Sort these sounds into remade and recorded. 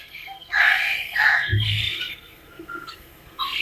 remade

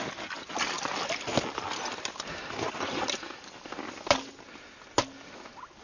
recorded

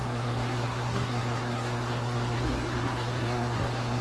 remade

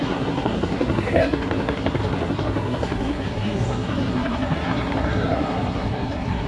remade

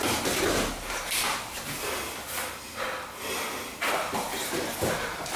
recorded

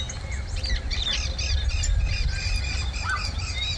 recorded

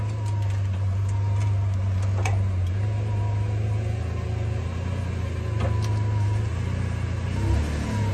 recorded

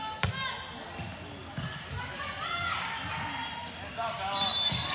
recorded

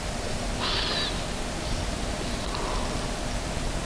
recorded